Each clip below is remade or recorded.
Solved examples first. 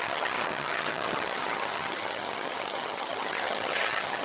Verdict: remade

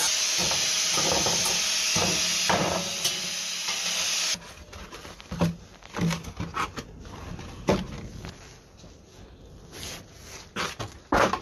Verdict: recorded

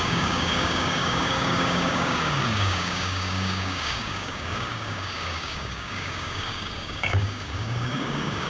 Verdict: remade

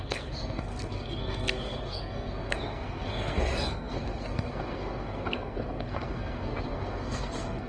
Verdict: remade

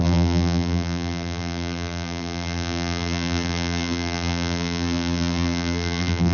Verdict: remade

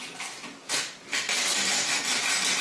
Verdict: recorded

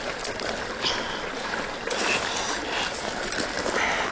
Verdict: recorded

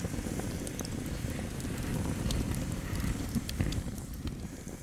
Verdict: remade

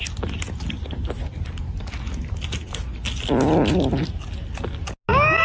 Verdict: recorded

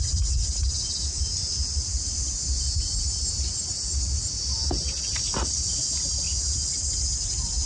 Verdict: recorded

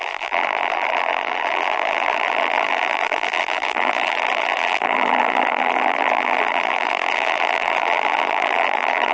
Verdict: remade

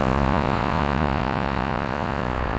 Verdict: remade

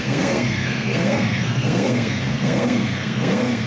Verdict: remade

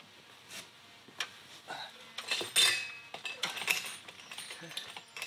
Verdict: recorded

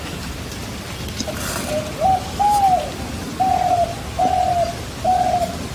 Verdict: recorded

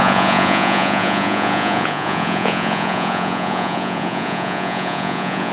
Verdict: remade